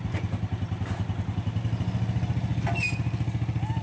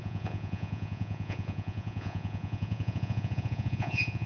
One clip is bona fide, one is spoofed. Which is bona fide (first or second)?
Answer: first